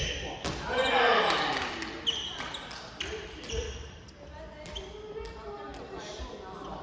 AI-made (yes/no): no